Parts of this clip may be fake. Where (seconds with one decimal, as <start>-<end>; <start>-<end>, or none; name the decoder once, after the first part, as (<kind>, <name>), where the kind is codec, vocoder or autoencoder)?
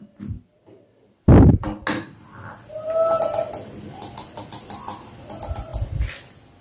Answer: none